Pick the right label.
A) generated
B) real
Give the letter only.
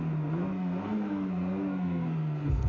A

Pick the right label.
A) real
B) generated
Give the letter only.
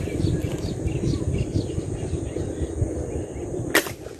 A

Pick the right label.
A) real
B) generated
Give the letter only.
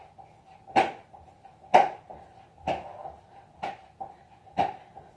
A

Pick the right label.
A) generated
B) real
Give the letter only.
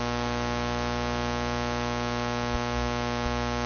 B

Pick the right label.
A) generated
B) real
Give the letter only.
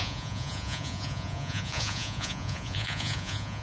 A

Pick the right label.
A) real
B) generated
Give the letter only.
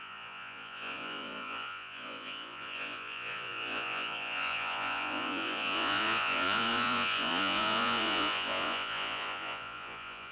B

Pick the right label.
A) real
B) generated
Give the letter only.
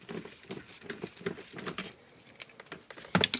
A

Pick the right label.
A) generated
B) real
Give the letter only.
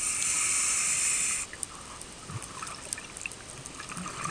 B